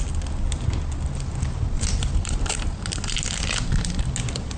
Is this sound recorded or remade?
recorded